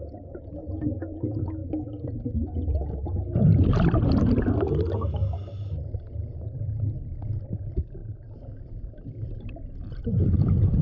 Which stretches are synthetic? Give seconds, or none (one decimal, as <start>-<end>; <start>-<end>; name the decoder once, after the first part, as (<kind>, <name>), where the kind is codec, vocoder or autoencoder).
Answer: none